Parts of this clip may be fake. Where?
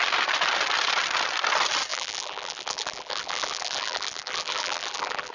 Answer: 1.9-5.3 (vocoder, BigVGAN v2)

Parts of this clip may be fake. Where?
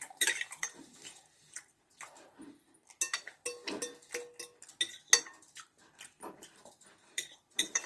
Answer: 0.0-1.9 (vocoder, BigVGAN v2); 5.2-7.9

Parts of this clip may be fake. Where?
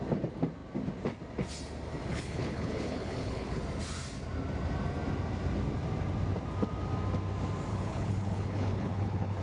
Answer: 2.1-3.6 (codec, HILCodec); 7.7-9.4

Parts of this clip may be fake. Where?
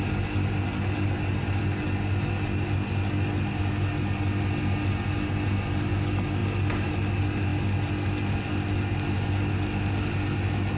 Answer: none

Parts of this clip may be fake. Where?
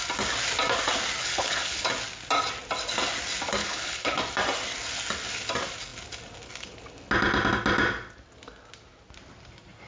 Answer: 1.2-1.9 (codec, HILCodec); 3.6-4.2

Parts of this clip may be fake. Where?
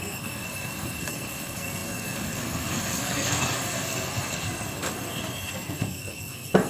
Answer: 0.0-6.7 (codec, SNAC)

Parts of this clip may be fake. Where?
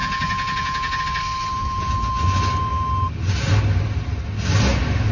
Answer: 0.0-1.0 (vocoder, Vocos); 1.6-2.1